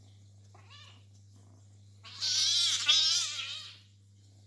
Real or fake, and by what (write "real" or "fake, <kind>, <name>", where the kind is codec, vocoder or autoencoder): real